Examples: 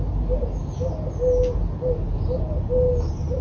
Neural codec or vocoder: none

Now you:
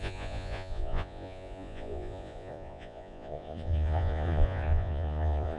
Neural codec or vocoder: vocoder, Vocos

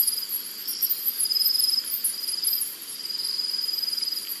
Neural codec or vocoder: vocoder, BigVGAN v2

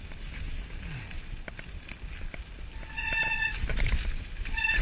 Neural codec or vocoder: none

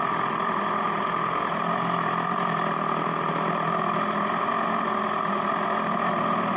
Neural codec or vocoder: none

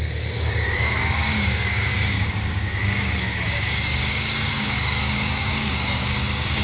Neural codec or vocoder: codec, DAC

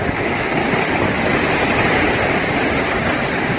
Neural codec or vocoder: none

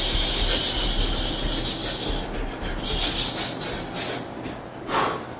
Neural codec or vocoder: none